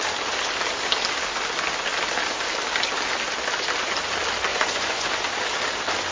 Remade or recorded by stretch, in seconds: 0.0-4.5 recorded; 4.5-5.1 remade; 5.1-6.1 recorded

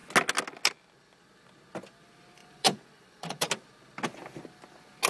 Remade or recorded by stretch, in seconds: 0.0-2.4 recorded; 2.4-3.5 remade; 3.5-5.1 recorded

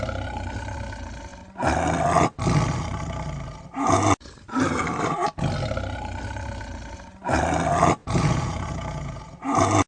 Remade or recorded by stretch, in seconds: 0.0-8.0 recorded; 8.0-9.2 remade; 9.2-9.9 recorded

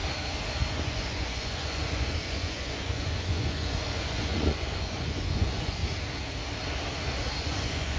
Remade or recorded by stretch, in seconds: 0.0-0.7 recorded; 0.7-5.8 remade; 5.8-7.4 recorded; 7.4-8.0 remade

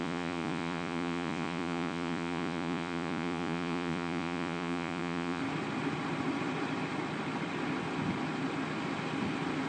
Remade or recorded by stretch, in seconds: 0.0-5.4 remade; 5.4-9.7 recorded